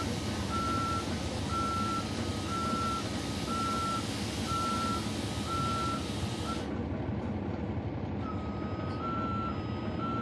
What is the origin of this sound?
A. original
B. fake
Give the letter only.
A